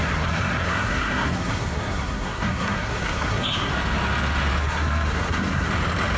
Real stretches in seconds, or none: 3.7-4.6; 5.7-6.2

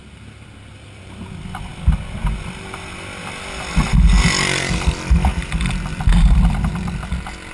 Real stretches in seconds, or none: 0.0-7.5

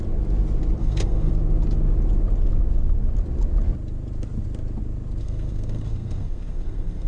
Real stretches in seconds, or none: 0.0-0.8; 1.3-5.2

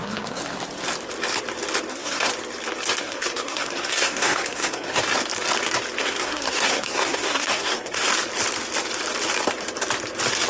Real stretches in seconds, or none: 0.4-1.9; 2.3-3.0; 5.0-6.0; 8.1-10.5

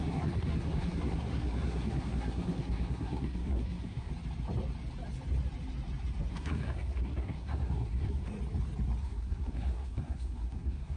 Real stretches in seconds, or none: 4.1-6.3; 8.3-9.0